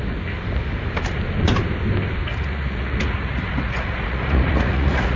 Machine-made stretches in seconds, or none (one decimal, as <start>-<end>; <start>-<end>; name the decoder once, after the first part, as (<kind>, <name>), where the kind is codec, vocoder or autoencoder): 2.3-5.2 (vocoder, Vocos)